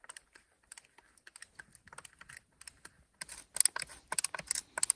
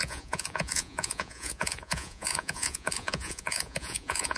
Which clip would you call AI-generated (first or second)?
second